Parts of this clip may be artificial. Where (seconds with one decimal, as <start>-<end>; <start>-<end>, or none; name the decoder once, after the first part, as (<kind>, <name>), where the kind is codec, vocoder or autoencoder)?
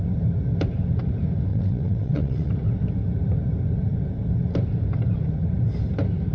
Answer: 1.5-2.5 (vocoder, WaveNeXt)